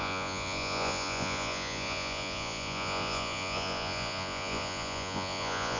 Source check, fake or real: fake